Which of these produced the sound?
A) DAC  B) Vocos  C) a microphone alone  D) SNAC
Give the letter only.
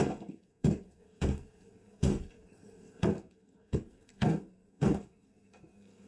D